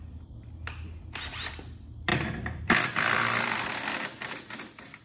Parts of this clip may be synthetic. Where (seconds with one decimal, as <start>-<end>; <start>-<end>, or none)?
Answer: 2.1-3.5